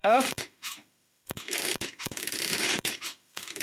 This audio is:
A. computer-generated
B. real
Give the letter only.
A